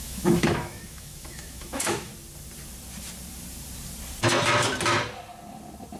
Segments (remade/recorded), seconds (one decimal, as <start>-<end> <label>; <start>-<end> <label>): 0.0-2.1 remade; 2.1-6.0 recorded